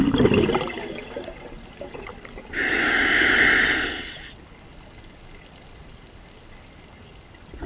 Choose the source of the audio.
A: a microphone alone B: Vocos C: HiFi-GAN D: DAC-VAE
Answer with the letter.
A